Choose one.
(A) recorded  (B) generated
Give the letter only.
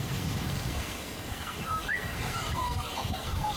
B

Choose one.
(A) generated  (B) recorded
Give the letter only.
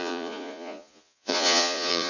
A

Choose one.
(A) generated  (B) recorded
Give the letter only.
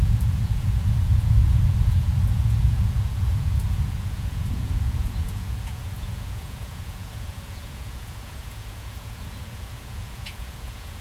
A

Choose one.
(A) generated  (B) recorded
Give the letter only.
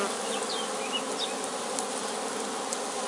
B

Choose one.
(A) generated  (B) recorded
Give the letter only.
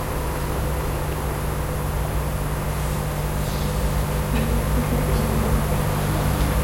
B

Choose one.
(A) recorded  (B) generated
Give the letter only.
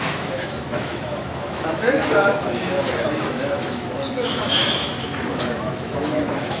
B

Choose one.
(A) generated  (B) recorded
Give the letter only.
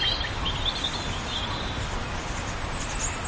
B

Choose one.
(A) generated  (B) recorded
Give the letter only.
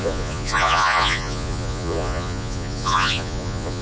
A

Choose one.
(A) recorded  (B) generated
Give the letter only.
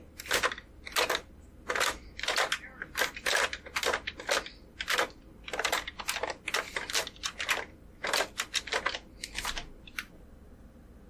A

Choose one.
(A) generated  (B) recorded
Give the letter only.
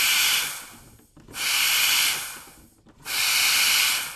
B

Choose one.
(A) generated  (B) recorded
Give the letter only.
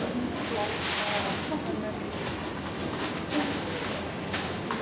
B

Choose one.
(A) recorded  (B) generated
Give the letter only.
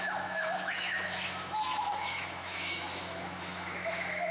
B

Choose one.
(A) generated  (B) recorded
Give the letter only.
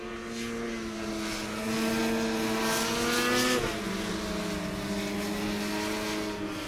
B